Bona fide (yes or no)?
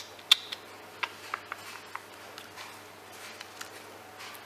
yes